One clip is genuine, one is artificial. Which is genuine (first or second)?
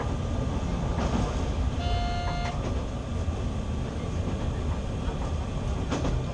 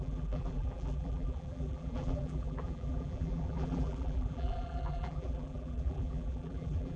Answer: first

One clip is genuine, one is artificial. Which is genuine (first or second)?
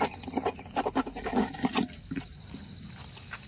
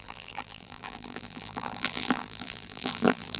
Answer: first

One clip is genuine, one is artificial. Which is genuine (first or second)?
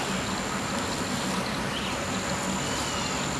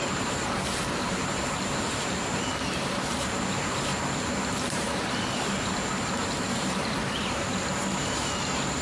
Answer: first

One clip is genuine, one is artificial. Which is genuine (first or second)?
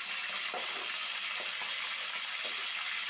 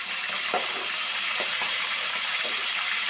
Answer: first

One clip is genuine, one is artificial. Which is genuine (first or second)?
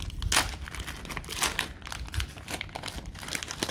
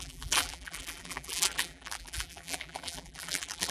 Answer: first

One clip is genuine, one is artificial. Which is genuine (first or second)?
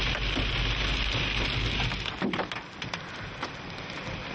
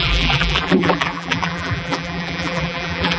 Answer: first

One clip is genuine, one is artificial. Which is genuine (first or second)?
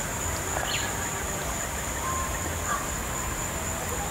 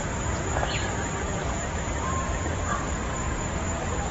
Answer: first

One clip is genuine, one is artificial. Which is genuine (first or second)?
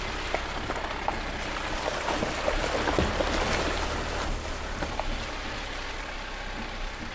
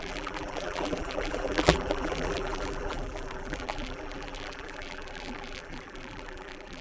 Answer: first